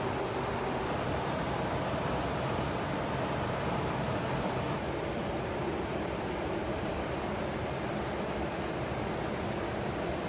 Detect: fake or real fake